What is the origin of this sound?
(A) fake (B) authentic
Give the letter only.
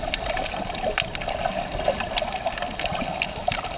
B